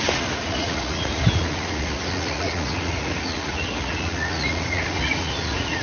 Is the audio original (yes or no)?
no